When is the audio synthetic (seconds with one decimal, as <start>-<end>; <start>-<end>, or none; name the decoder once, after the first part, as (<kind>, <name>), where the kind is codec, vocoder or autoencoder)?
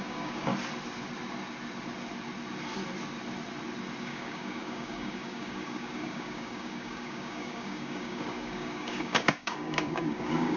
0.0-0.5 (codec, DAC); 4.0-10.6